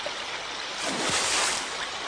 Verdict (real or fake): real